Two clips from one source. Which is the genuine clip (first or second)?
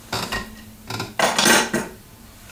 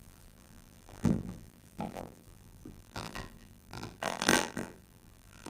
first